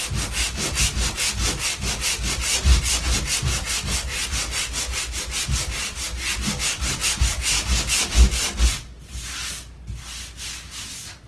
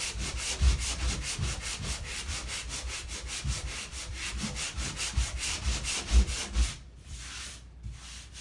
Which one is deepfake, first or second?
second